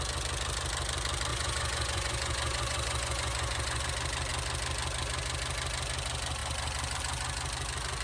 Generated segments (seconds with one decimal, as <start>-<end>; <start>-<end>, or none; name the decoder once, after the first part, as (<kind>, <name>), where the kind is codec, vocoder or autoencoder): 1.3-3.8 (vocoder, Vocos)